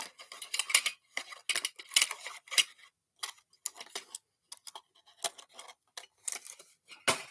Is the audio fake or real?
real